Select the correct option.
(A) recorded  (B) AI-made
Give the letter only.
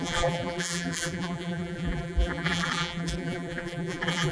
B